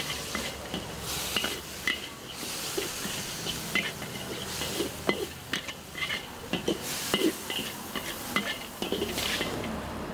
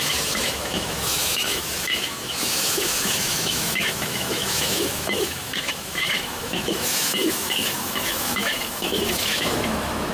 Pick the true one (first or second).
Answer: first